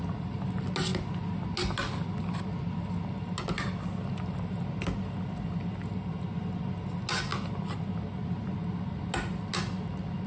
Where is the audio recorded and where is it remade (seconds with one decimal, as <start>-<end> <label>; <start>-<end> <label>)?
0.0-10.3 recorded